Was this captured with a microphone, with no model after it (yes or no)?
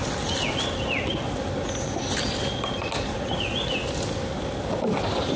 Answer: yes